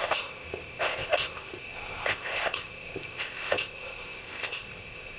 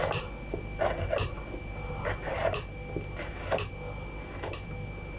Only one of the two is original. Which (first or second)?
second